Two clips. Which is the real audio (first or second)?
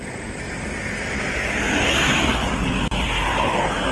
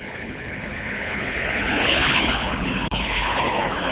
first